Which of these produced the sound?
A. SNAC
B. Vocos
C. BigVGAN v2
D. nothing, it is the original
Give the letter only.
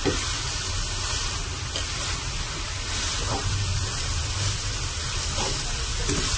D